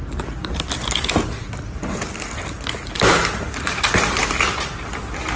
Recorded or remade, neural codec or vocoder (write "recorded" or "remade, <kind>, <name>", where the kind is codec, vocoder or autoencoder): recorded